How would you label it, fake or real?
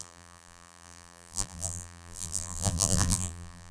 fake